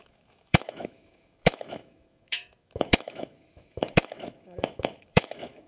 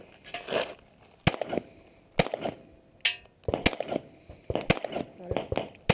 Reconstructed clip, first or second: first